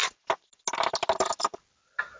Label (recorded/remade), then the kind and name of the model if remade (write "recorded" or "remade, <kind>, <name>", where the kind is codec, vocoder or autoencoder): recorded